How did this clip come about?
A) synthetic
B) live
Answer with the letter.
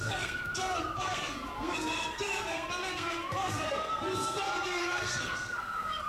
A